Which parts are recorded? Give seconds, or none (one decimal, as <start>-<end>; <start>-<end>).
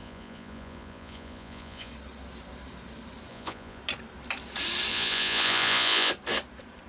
1.9-3.3; 3.8-4.9; 6.1-6.9